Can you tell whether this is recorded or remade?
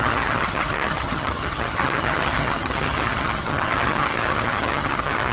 remade